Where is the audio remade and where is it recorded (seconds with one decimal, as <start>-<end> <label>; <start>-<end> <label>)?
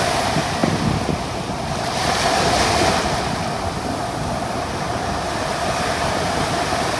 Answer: 0.0-7.0 recorded